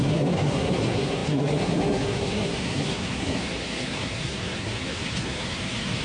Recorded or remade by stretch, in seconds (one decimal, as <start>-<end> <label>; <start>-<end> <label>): 0.0-6.0 remade